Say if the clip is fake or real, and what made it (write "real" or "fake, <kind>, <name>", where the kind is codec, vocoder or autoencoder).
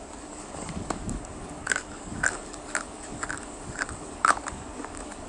fake, codec, DAC